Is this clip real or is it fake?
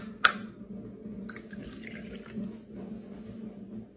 real